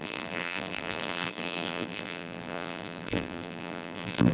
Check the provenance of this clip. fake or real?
fake